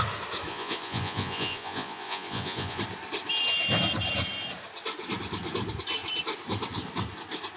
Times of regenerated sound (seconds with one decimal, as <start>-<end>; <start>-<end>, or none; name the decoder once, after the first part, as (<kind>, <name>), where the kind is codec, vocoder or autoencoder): 0.5-2.8 (vocoder, Vocos)